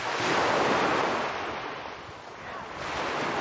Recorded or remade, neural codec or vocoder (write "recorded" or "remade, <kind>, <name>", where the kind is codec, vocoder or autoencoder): recorded